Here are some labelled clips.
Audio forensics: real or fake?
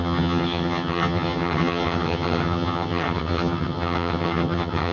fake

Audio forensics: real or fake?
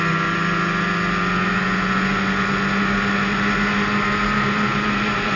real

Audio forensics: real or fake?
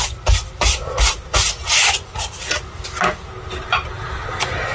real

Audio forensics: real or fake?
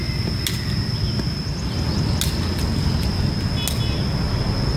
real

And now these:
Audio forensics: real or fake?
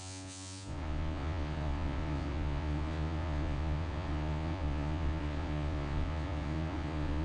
fake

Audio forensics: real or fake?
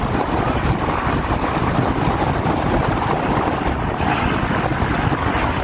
real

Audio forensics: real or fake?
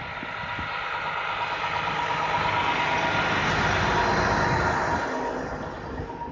real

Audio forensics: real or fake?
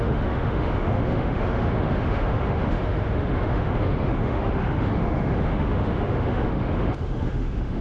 fake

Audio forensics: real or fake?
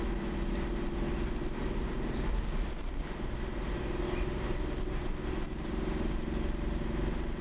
real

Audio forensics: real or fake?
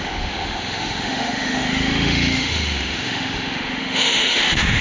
fake